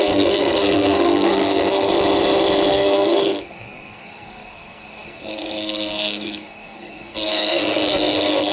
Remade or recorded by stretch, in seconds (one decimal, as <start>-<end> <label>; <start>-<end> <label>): 0.0-1.9 remade; 1.9-2.7 recorded; 2.7-8.5 remade